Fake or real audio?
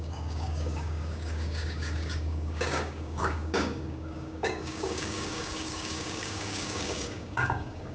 fake